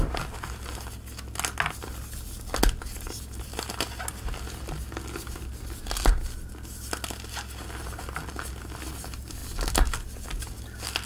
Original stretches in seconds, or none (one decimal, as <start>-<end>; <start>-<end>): 0.0-11.1